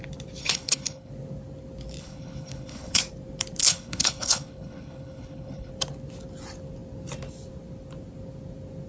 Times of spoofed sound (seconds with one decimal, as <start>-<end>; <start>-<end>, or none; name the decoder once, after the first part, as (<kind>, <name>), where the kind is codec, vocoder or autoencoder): 0.4-1.1 (codec, HILCodec); 2.0-3.0; 3.6-5.7